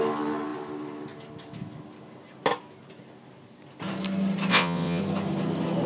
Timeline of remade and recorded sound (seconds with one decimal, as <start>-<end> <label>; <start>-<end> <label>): 0.0-4.5 recorded; 4.5-5.0 remade; 5.0-5.9 recorded

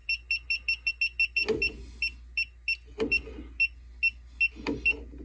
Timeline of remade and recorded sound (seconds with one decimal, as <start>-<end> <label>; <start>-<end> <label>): 0.0-5.2 recorded

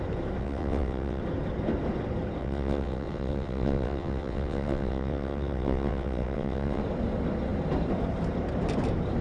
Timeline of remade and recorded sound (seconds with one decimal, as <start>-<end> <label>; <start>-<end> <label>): 0.0-0.4 recorded; 0.4-1.2 remade; 1.2-2.4 recorded; 2.4-6.8 remade; 6.8-9.2 recorded

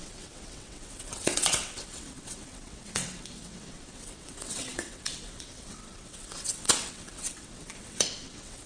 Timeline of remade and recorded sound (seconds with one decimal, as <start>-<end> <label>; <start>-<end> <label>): 0.0-8.7 remade

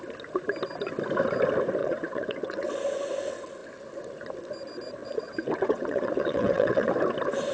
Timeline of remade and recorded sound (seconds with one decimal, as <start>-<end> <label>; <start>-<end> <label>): 0.0-1.8 recorded; 1.8-2.7 remade; 2.7-5.0 recorded; 5.0-6.9 remade; 6.9-7.5 recorded